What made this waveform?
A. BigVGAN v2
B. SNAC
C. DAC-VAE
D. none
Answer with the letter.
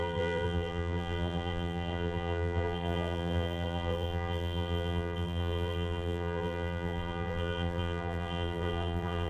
A